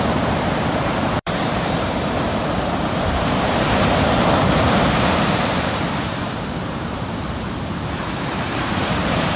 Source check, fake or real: fake